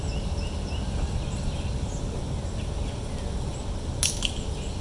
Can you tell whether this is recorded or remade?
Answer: recorded